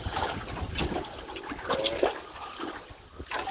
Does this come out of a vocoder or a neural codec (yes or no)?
no